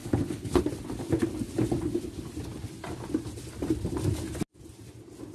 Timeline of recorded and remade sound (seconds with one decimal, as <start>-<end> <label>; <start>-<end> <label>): 0.0-0.6 remade; 0.6-5.3 recorded